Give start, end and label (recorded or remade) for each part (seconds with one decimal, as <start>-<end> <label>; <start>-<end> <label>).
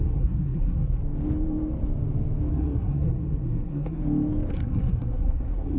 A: 0.0-1.0 remade; 1.0-2.5 recorded; 2.5-4.0 remade; 4.0-4.5 recorded; 4.5-5.8 remade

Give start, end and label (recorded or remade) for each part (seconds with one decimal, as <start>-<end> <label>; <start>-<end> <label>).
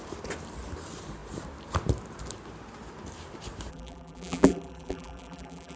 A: 0.0-3.7 recorded; 3.7-5.8 remade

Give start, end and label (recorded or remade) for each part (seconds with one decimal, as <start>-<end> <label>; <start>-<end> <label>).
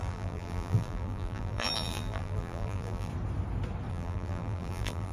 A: 0.0-3.1 remade; 3.1-3.9 recorded; 3.9-5.1 remade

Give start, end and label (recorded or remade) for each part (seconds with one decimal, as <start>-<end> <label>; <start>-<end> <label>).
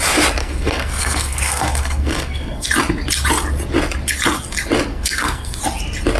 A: 0.0-0.4 recorded; 0.4-2.7 remade; 2.7-4.9 recorded; 4.9-5.6 remade; 5.6-6.2 recorded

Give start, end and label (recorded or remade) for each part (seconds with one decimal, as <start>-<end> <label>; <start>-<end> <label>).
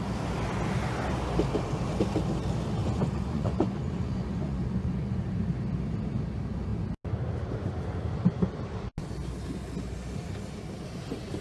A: 0.0-2.8 recorded; 2.8-5.2 remade; 5.2-11.4 recorded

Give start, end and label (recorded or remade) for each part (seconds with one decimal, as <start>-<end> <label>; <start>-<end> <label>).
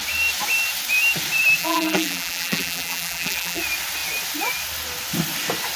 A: 0.0-1.6 recorded; 1.6-3.6 remade; 3.6-5.8 recorded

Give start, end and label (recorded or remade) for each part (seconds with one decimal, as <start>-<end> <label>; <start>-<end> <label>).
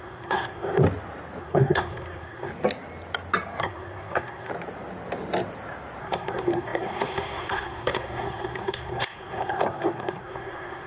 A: 0.0-0.8 remade; 0.8-1.4 recorded; 1.4-2.5 remade; 2.5-3.6 recorded; 3.6-4.5 remade; 4.5-6.0 recorded; 6.0-10.9 remade